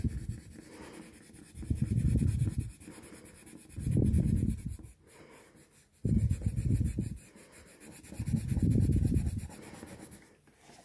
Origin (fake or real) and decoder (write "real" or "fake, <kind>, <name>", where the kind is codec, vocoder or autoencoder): real